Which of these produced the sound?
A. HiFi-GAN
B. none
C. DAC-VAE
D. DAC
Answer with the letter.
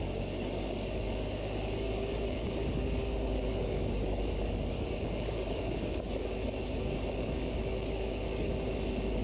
D